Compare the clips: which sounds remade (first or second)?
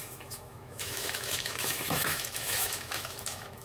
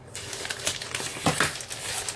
first